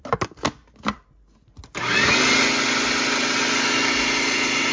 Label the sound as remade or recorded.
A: recorded